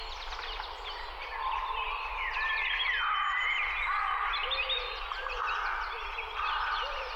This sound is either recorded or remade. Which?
recorded